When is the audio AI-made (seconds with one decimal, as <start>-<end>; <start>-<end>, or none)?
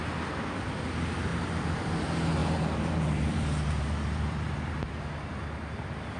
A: 1.3-1.9; 2.4-4.9